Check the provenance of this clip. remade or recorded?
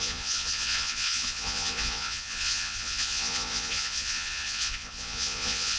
remade